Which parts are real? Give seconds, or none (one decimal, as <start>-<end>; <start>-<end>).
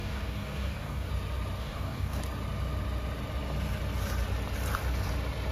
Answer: 1.1-1.6; 2.2-5.5